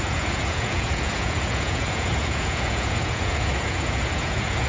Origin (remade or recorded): remade